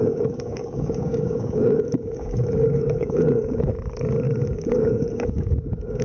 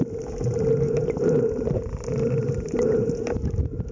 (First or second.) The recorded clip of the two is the second